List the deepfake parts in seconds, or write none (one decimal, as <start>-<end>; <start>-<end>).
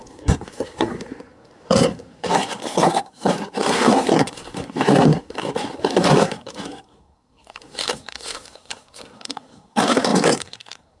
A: 0.0-11.0